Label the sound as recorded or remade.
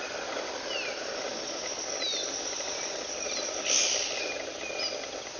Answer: recorded